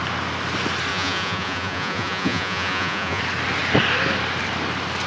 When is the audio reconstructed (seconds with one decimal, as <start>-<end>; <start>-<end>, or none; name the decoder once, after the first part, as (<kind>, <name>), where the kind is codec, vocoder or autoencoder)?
0.9-3.2 (vocoder, Vocos)